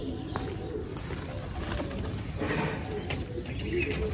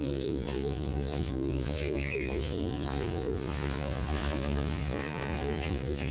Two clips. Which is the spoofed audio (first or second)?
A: second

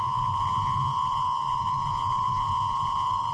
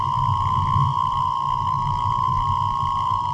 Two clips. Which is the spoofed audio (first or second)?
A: first